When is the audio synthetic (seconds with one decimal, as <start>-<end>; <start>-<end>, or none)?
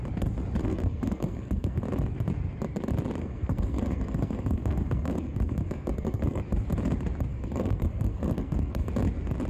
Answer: 0.6-1.8; 3.2-6.4; 7.3-8.9